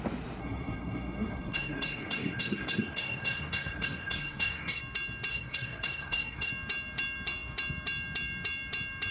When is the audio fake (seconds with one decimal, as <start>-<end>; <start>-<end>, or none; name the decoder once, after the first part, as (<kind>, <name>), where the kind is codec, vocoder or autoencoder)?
0.4-4.8 (codec, SNAC); 5.3-6.5